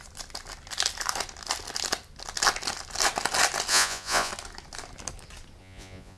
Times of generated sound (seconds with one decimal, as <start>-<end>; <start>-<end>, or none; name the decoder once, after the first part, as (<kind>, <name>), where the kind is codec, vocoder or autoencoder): 3.7-4.3 (vocoder, Vocos); 5.6-6.2